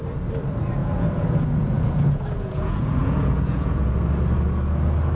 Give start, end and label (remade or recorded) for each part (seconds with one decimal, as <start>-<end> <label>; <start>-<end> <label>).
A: 0.0-0.8 recorded; 0.8-3.9 remade; 3.9-5.2 recorded